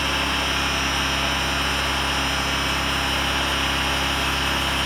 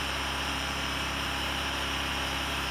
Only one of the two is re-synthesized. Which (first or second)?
second